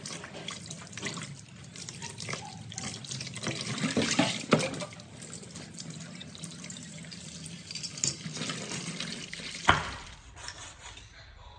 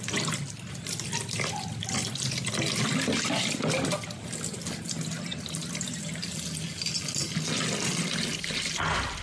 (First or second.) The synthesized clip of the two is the first